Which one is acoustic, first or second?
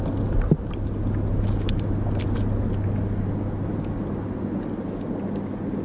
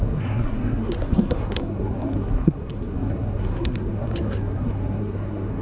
first